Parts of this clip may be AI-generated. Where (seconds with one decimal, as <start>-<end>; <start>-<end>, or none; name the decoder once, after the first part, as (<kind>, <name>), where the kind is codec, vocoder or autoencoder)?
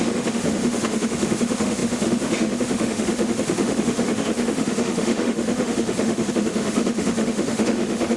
0.0-8.2 (autoencoder, DAC-VAE)